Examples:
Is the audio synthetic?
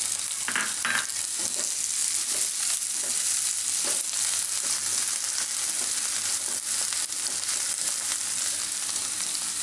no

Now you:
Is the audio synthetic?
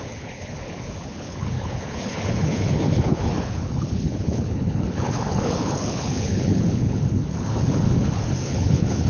yes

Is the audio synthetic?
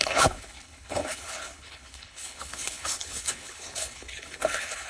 yes